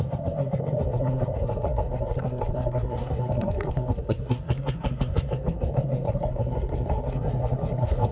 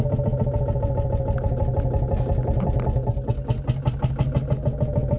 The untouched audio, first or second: second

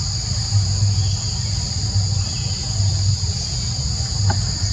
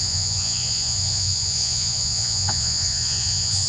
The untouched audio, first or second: first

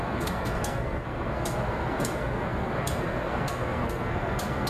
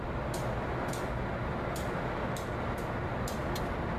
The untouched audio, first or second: second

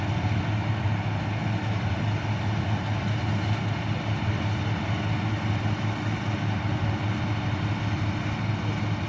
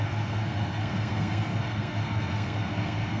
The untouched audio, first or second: first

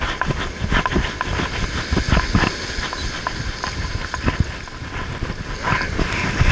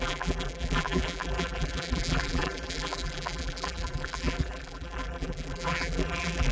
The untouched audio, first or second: first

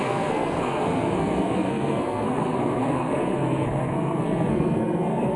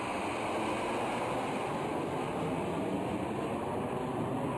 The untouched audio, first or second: second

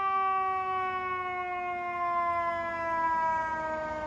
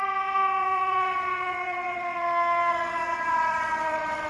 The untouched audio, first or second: first